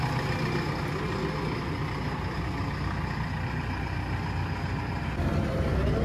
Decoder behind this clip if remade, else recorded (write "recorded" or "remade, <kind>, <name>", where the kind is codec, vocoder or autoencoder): recorded